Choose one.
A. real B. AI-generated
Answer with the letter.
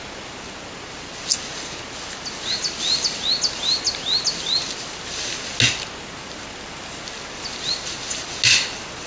A